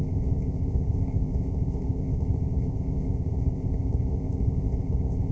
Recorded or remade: remade